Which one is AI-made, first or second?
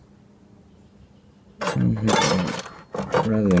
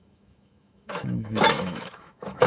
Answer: second